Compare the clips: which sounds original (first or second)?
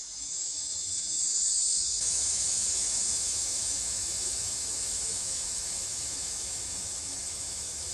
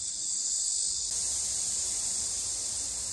second